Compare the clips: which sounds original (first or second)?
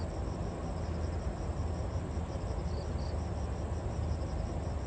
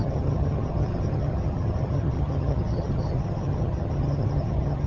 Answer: first